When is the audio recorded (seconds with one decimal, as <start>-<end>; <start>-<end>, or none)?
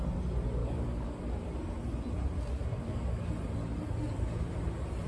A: 0.0-0.6; 1.2-2.7; 3.3-5.1